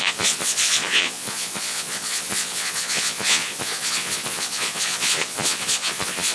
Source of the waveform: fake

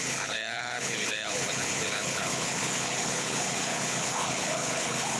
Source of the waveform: fake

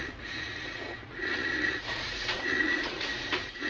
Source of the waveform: fake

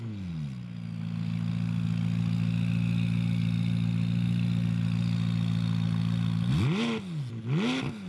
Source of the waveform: real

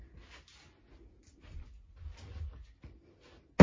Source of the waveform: real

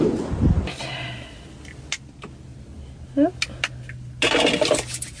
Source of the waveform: real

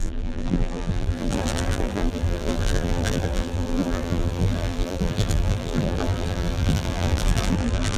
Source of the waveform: fake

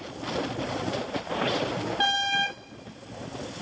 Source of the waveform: real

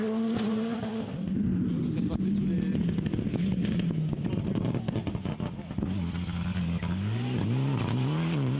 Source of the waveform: real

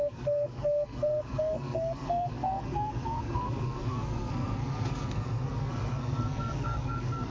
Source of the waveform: fake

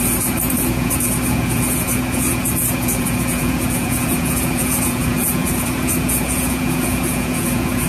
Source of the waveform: fake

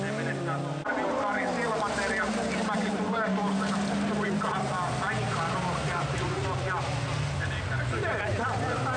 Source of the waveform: real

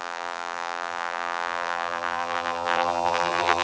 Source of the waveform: fake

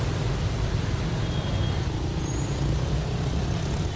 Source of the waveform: real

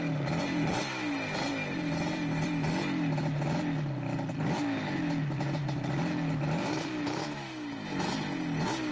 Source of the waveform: real